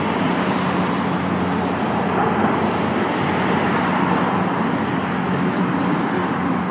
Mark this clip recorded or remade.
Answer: recorded